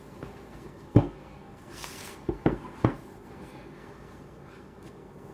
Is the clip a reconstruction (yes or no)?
yes